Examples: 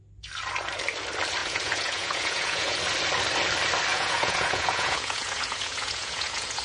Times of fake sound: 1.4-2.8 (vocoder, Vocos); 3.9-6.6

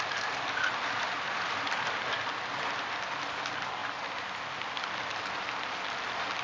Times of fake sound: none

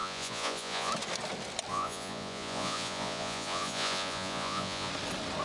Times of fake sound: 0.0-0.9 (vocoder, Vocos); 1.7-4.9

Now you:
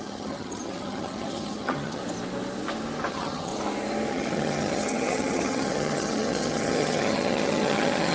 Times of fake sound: 0.0-2.0 (vocoder, HiFi-GAN); 3.1-3.5; 4.1-8.1

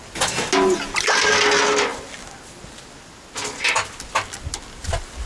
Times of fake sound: none

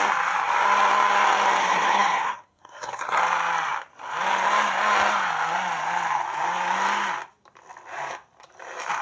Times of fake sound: 1.6-3.2 (codec, SNAC)

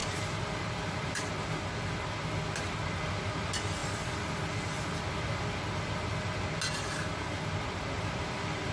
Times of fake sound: 0.0-1.3 (vocoder, BigVGAN v2)

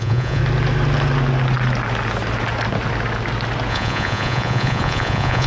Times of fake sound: 0.0-0.4 (vocoder, Vocos); 3.7-5.5